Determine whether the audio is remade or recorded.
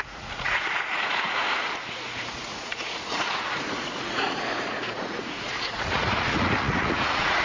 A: remade